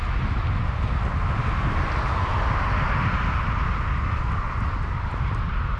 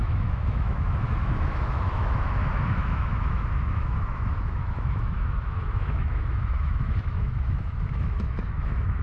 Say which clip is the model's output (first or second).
second